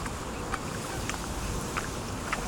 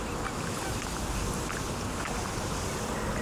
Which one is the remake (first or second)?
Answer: first